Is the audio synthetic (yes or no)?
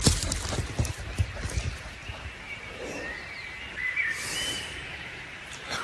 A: no